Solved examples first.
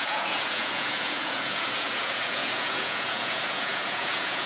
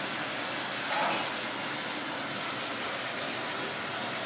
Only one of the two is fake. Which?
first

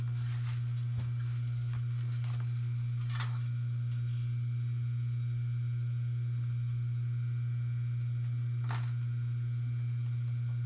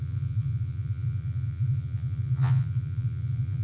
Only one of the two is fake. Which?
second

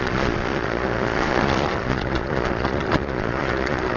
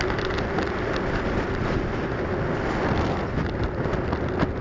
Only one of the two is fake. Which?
first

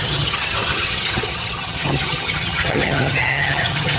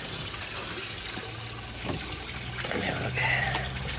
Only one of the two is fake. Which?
first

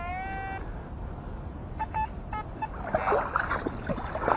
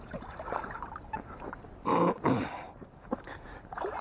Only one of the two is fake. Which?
second